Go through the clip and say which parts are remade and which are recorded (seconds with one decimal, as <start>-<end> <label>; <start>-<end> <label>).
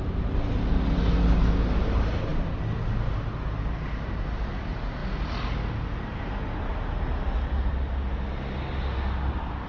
0.0-9.7 recorded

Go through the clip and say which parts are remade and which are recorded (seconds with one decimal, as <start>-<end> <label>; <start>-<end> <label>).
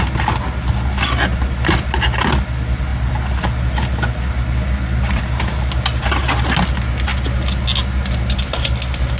0.0-9.2 recorded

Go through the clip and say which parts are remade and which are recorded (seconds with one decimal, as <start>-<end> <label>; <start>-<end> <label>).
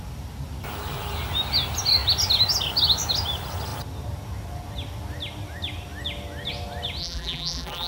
0.0-7.0 recorded; 7.0-7.9 remade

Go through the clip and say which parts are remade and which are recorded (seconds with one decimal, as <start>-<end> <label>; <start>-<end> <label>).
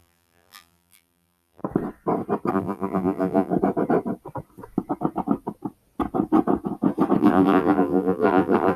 0.0-1.6 remade; 1.6-2.5 recorded; 2.5-3.5 remade; 3.5-7.2 recorded; 7.2-8.8 remade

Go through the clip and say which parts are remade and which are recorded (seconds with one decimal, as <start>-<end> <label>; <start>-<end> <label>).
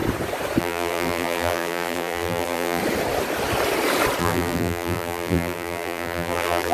0.0-0.6 recorded; 0.6-2.8 remade; 2.8-4.2 recorded; 4.2-6.7 remade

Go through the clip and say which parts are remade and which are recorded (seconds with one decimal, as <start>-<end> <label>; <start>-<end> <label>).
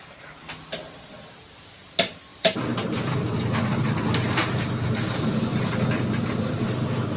0.0-2.3 recorded; 2.3-5.2 remade; 5.2-7.2 recorded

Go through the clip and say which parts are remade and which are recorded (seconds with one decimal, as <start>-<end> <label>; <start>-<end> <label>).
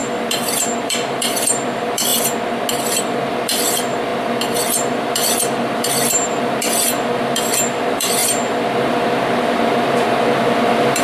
0.0-2.1 remade; 2.1-2.7 recorded; 2.7-11.0 remade